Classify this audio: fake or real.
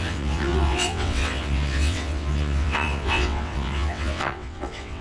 fake